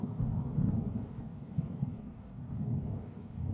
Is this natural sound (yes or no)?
no